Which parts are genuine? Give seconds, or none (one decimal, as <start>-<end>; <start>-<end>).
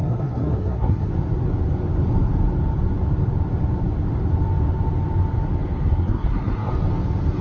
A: 1.1-5.9; 6.7-7.4